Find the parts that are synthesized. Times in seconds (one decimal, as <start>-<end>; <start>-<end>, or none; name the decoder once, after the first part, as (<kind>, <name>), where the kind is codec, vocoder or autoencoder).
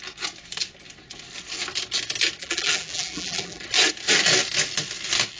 2.4-3.6 (vocoder, BigVGAN v2)